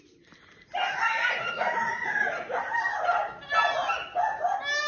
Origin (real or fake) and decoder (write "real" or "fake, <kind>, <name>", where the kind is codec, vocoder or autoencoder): real